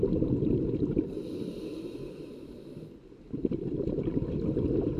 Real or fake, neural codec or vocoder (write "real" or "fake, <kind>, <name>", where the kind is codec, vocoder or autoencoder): real